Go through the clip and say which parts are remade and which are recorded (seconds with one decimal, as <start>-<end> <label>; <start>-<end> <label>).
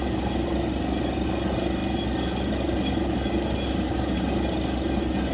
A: 0.0-5.3 recorded